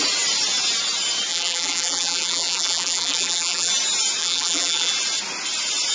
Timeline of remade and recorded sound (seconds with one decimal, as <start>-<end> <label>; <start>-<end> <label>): 0.0-1.3 recorded; 1.3-3.7 remade; 3.7-4.2 recorded; 4.2-4.9 remade; 4.9-5.9 recorded